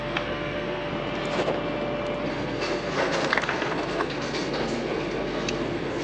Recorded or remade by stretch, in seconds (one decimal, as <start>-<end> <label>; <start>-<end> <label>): 0.0-0.9 remade; 0.9-2.3 recorded; 2.3-6.0 remade